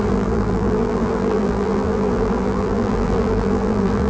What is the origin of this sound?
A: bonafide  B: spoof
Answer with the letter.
B